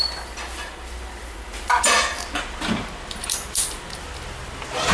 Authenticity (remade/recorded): recorded